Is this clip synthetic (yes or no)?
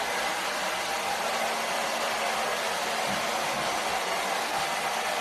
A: no